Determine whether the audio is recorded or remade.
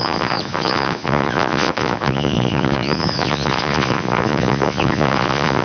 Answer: remade